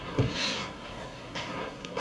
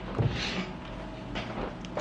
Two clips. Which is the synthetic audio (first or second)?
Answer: first